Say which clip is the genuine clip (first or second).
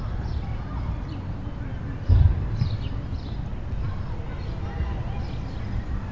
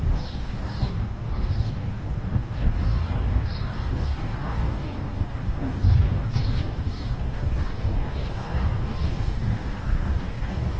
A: first